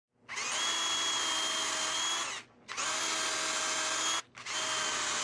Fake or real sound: real